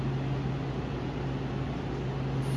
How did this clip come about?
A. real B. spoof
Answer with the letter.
A